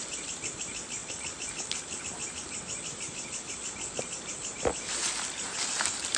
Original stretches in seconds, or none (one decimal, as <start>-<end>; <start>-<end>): 0.0-6.2

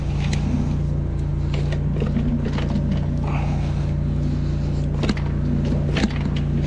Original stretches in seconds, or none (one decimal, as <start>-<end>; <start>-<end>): 0.0-6.7

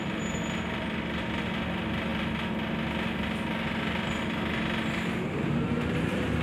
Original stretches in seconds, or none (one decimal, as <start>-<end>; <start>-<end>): 0.0-6.4

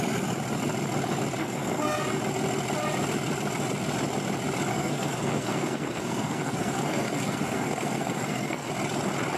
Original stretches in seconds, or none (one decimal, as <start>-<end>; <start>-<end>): 0.0-1.4; 2.0-4.7; 8.7-9.4

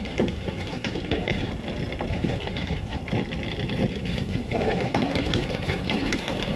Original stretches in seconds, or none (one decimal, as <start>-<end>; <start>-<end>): 1.5-2.1; 3.0-3.9

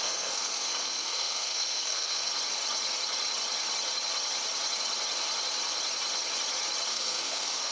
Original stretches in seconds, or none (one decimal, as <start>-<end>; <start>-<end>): 2.3-6.9

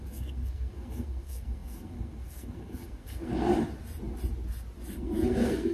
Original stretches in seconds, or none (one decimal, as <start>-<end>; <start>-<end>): 3.5-4.9